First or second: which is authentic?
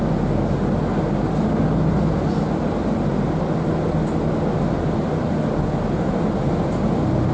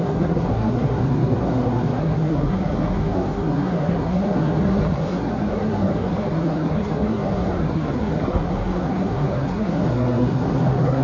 first